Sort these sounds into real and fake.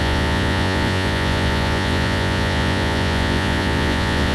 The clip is fake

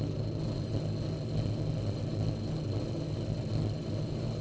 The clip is real